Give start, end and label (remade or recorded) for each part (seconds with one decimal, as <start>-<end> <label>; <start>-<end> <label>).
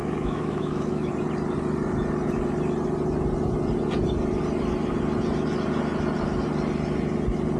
0.0-1.1 remade; 1.1-7.6 recorded